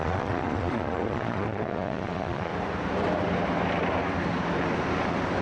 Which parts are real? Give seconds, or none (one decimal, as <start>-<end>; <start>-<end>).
2.5-5.4